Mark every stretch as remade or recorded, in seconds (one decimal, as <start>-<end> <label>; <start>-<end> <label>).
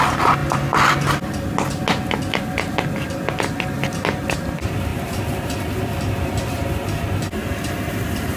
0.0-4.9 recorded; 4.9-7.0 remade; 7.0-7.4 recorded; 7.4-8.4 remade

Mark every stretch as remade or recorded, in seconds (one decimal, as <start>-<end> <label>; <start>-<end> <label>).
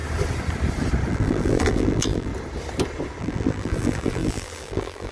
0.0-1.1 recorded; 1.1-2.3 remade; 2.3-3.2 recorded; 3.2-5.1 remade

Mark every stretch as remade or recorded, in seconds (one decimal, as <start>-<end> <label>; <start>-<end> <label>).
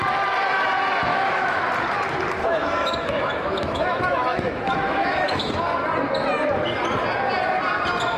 0.0-1.1 recorded; 1.1-1.6 remade; 1.6-2.4 recorded; 2.4-5.4 remade; 5.4-8.2 recorded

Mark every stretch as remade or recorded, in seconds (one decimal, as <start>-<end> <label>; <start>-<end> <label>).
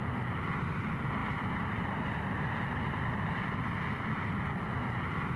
0.0-5.4 recorded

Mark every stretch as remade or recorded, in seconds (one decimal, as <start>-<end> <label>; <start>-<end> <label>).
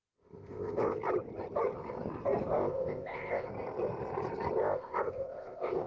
0.0-1.0 remade; 1.0-2.5 recorded; 2.5-3.5 remade; 3.5-4.6 recorded; 4.6-5.9 remade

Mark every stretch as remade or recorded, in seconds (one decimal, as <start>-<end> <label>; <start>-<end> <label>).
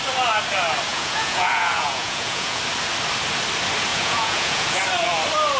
0.0-0.9 recorded; 0.9-2.6 remade; 2.6-3.9 recorded; 3.9-4.8 remade; 4.8-5.6 recorded